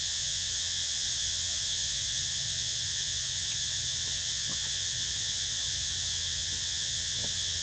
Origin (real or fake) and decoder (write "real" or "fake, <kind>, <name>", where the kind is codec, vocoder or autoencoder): fake, vocoder, WaveNeXt